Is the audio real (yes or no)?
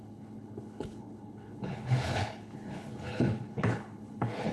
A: no